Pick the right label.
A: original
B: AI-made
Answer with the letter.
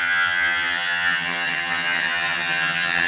B